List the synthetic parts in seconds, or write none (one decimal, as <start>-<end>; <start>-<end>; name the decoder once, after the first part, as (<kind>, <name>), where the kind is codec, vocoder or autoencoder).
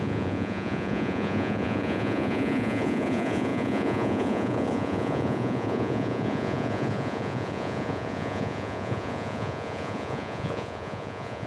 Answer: 0.0-11.5 (vocoder, Vocos)